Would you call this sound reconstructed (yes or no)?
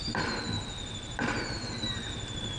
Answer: no